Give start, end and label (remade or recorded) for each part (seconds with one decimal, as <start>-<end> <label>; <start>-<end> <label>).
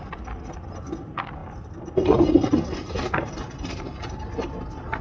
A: 0.0-5.0 recorded